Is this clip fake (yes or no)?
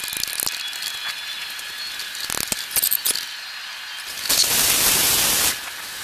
no